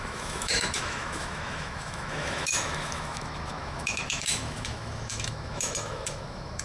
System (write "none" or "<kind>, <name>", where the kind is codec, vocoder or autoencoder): autoencoder, DAC-VAE